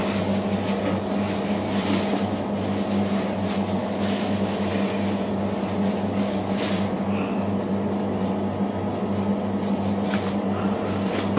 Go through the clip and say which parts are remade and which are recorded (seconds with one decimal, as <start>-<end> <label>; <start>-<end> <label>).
0.0-3.8 recorded; 3.8-4.7 remade; 4.7-11.4 recorded